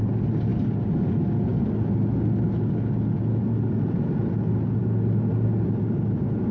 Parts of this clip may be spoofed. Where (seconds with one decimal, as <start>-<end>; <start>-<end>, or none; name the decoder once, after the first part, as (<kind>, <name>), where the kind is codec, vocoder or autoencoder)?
none